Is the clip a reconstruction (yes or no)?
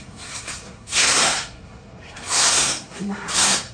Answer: yes